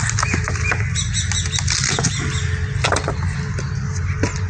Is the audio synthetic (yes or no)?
no